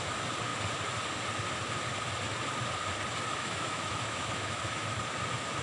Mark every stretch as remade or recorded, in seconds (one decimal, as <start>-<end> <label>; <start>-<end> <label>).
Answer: 0.0-3.3 recorded; 3.3-5.0 remade; 5.0-5.6 recorded